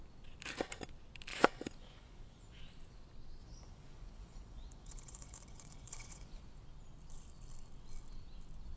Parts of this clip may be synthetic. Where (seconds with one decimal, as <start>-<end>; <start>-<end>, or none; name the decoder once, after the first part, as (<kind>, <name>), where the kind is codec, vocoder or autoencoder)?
1.3-2.6 (vocoder, Vocos); 3.4-6.4